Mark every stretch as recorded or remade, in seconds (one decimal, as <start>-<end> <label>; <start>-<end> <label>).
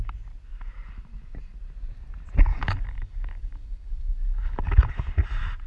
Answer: 0.0-2.5 recorded; 2.5-4.8 remade; 4.8-5.7 recorded